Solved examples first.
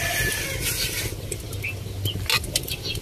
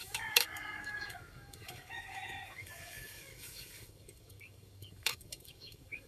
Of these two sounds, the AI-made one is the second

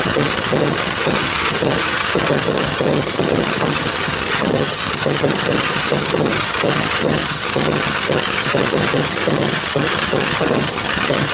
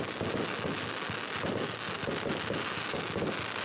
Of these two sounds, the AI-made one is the first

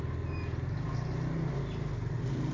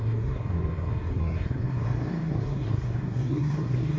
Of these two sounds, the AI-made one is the second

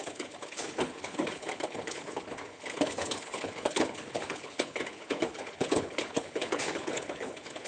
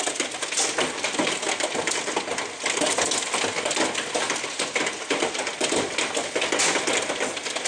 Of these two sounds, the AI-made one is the first